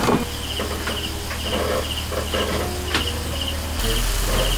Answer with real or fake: real